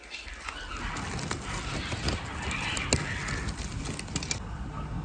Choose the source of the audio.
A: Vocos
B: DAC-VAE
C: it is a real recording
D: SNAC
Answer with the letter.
C